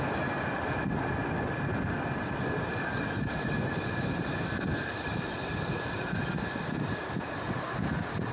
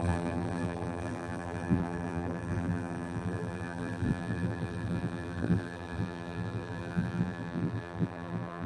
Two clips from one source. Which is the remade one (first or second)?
second